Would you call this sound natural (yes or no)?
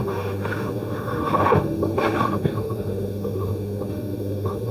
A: no